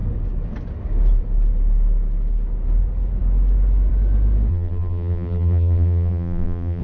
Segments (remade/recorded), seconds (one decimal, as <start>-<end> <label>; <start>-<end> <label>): 0.0-4.5 recorded; 4.5-6.8 remade